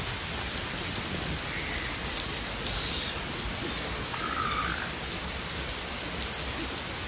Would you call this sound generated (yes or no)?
no